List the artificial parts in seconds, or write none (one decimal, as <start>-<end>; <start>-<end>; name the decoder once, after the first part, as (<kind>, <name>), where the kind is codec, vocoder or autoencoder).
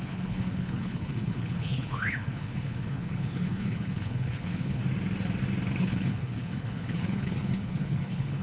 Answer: 0.0-4.8 (codec, HILCodec); 5.8-8.4